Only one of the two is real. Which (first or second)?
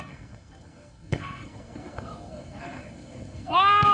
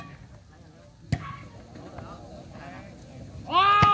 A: second